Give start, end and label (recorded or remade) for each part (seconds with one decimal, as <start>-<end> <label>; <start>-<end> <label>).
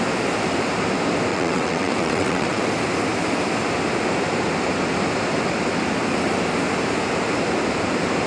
0.0-1.3 recorded; 1.3-2.6 remade; 2.6-8.3 recorded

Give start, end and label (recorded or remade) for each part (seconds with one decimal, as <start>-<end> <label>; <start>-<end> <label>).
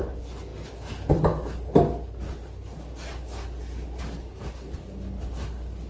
0.0-5.9 recorded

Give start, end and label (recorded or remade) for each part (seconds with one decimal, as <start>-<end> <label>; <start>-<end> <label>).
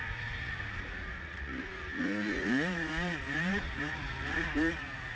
0.0-5.2 remade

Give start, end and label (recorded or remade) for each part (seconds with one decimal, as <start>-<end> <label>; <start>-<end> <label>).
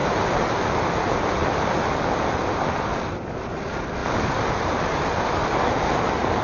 0.0-6.4 recorded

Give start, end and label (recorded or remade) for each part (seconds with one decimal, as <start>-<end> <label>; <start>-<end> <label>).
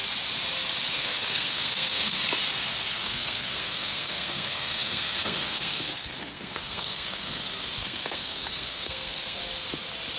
0.0-0.9 recorded; 0.9-2.2 remade; 2.2-2.9 recorded; 2.9-9.4 remade; 9.4-10.2 recorded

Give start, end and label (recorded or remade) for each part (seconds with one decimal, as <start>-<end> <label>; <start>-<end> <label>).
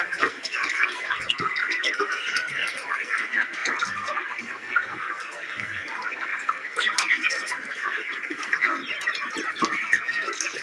0.0-8.8 remade; 8.8-9.5 recorded; 9.5-10.6 remade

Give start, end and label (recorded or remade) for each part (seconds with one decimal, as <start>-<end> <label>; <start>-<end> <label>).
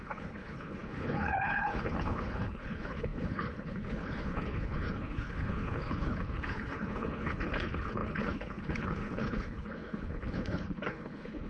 0.0-11.5 remade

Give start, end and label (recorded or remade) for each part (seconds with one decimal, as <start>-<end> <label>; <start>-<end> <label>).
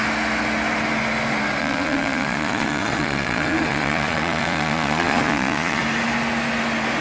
0.0-1.6 recorded; 1.6-5.8 remade; 5.8-7.0 recorded